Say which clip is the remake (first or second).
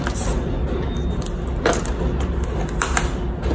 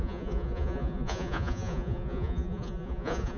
second